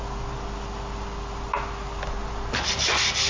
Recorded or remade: recorded